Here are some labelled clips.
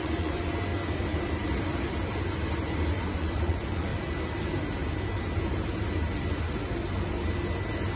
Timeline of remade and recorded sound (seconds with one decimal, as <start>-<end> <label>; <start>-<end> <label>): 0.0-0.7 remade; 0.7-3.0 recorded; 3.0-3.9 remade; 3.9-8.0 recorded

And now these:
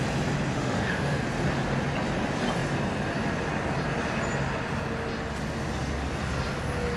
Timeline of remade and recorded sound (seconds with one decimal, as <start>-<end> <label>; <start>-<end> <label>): 0.0-0.5 recorded; 0.5-1.2 remade; 1.2-7.0 recorded

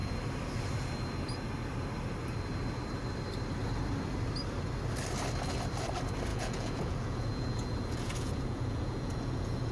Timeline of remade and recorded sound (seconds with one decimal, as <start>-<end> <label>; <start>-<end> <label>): 0.0-6.3 recorded; 6.3-9.7 remade